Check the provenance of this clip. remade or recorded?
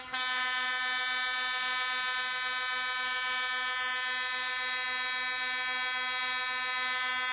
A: recorded